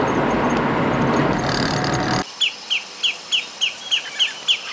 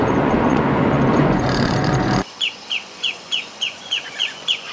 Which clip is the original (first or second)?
first